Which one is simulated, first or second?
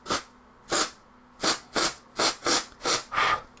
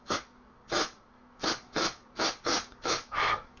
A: second